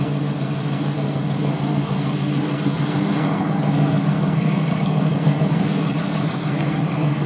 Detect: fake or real fake